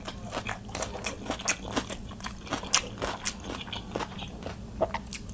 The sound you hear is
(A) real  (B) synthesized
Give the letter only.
A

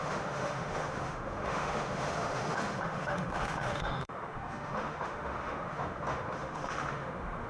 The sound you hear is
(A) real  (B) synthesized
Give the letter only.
B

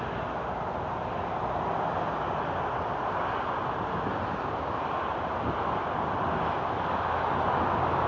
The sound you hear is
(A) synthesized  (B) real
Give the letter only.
B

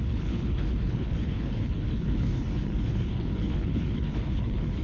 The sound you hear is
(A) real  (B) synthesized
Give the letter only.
B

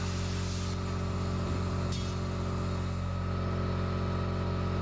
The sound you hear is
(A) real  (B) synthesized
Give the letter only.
A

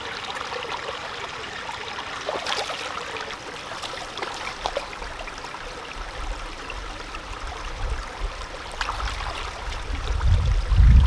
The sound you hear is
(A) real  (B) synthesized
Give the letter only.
B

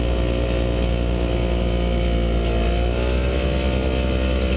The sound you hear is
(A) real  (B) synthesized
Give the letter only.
A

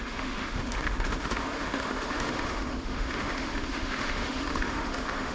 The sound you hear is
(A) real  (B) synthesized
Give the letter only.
B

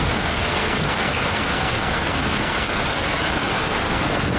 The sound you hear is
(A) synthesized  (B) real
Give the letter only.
A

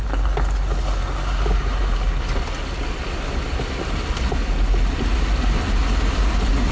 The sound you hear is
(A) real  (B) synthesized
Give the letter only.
A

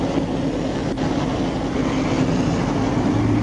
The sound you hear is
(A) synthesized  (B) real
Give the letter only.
B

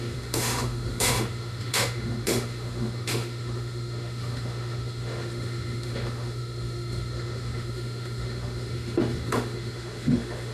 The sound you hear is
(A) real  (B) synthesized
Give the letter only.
B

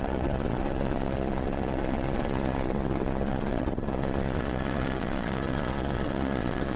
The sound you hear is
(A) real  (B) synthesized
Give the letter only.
B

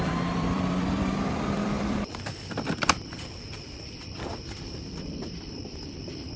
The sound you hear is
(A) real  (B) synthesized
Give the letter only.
B